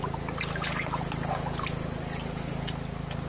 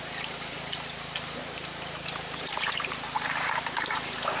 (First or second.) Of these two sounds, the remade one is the second